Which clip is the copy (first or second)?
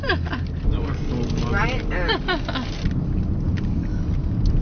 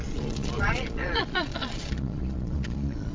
second